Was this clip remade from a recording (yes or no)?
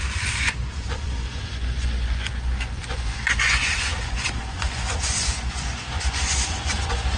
yes